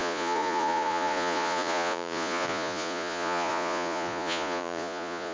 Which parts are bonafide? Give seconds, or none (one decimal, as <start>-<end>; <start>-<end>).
none